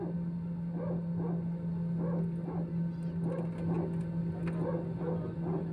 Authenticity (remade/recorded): recorded